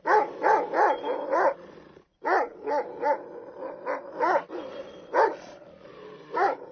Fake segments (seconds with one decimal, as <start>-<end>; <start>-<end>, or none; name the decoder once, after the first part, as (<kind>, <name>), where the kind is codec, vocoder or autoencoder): none